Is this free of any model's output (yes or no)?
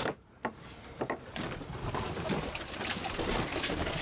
yes